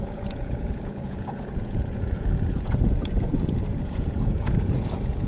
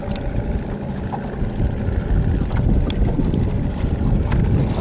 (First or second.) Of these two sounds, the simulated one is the first